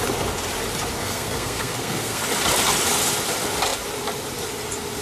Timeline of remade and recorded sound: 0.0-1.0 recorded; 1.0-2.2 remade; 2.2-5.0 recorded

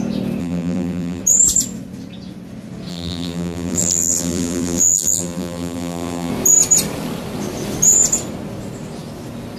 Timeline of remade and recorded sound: 0.0-0.4 recorded; 0.4-1.2 remade; 1.2-2.9 recorded; 2.9-6.3 remade; 6.3-9.6 recorded